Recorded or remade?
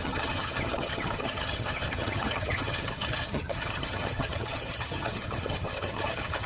remade